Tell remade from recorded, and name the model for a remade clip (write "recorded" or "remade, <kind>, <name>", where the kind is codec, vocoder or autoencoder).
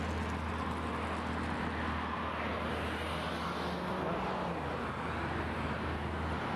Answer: recorded